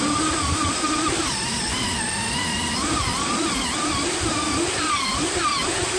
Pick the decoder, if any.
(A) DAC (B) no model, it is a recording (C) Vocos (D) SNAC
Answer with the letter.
B